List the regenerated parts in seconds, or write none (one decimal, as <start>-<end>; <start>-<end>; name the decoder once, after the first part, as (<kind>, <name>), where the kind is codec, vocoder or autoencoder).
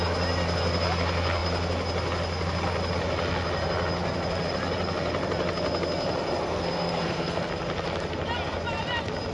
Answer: 6.4-7.4 (codec, SNAC)